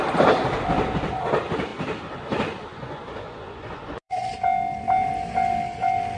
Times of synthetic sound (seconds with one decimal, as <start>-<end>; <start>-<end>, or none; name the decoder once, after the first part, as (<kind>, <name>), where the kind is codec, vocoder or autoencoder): 2.7-4.3 (vocoder, Vocos)